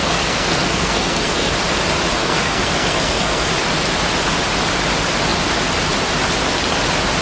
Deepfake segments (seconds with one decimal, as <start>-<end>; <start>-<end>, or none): 0.0-1.5; 2.2-3.5